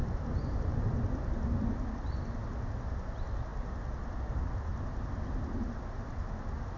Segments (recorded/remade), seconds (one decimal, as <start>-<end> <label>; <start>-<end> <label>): 0.0-6.8 recorded